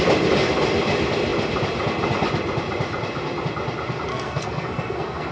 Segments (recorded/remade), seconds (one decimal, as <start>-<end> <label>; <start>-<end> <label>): 0.0-4.1 recorded; 4.1-5.3 remade